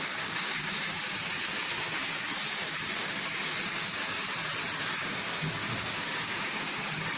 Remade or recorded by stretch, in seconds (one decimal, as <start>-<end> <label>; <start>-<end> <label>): 0.0-4.0 remade; 4.0-4.8 recorded; 4.8-7.2 remade